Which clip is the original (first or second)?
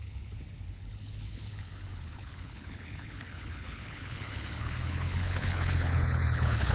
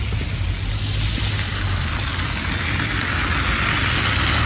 second